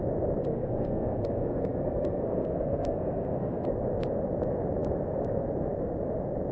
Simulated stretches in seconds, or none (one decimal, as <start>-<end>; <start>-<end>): 0.4-3.7